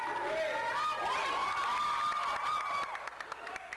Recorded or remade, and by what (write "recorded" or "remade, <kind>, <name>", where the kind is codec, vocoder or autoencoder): recorded